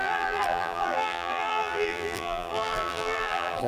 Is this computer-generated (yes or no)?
yes